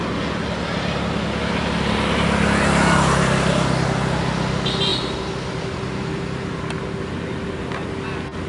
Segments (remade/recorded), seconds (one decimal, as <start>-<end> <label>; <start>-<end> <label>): 0.0-8.5 recorded